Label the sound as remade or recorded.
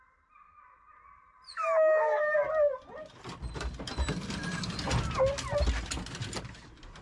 recorded